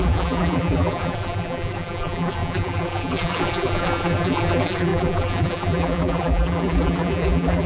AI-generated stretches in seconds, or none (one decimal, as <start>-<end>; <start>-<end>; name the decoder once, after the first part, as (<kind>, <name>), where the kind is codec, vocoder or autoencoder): 0.0-7.7 (vocoder, BigVGAN v2)